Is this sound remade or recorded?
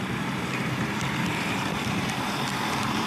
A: remade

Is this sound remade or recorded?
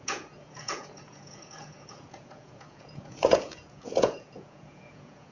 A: remade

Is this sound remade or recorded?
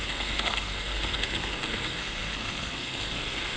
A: remade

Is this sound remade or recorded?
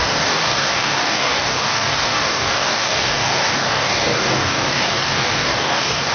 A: remade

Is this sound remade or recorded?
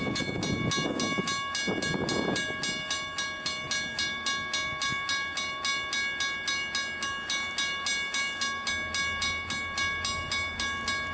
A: recorded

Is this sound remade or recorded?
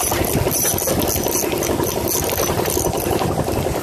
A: recorded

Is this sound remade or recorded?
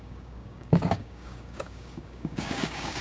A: remade